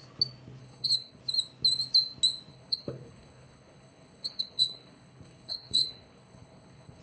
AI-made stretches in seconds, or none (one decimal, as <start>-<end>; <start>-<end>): 0.6-1.2; 2.5-7.0